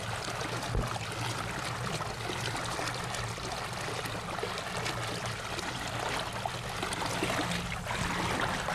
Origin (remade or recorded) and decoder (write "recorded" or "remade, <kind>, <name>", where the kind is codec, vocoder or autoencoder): recorded